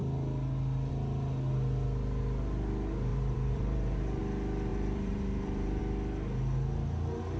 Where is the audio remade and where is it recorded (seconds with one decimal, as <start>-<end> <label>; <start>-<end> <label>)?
0.0-3.1 recorded; 3.1-4.2 remade; 4.2-4.7 recorded; 4.7-5.8 remade; 5.8-7.4 recorded